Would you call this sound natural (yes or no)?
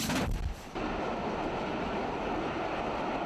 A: yes